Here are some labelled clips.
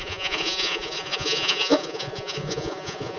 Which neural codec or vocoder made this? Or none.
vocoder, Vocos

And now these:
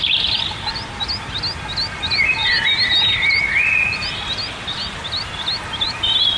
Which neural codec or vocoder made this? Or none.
none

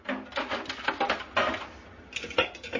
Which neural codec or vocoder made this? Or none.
none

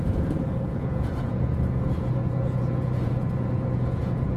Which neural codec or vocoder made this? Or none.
vocoder, Vocos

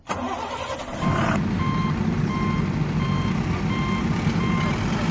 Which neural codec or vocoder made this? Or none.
none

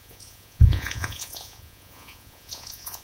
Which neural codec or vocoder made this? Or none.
vocoder, Vocos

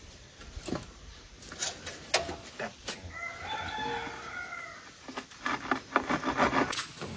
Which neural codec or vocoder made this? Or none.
none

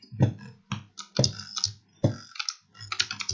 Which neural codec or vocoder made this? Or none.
none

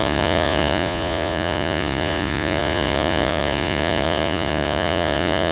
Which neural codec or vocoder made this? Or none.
vocoder, Vocos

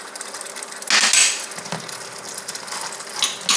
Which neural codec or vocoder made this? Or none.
none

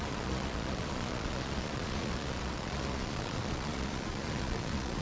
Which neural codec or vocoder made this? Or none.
vocoder, Vocos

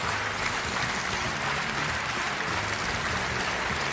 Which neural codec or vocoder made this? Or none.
none